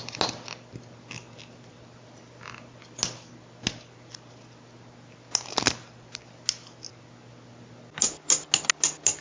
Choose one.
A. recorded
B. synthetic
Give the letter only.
A